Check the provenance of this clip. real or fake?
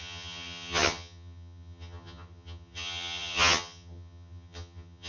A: fake